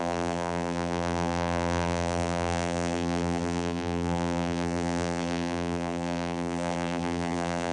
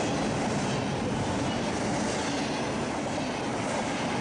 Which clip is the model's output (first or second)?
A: first